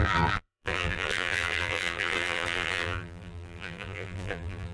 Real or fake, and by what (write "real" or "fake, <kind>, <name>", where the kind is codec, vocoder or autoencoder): fake, vocoder, BigVGAN v2